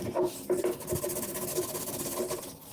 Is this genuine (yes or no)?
yes